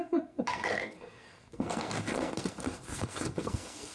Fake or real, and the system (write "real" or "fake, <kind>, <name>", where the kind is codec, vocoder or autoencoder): fake, codec, SNAC